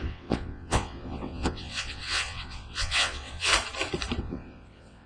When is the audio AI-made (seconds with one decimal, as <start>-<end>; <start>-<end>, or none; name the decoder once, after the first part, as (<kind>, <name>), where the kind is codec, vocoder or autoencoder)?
0.0-3.5 (vocoder, WaveNeXt); 4.2-5.1

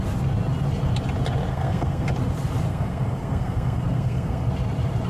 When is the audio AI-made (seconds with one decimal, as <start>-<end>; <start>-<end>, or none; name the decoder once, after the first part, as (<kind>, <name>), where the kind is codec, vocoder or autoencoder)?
1.5-2.1 (codec, SNAC); 2.7-4.5